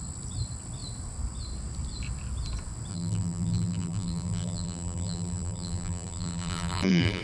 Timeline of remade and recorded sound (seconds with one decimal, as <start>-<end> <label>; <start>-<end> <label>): 0.0-2.9 recorded; 2.9-7.2 remade